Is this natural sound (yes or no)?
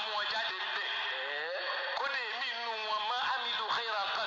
yes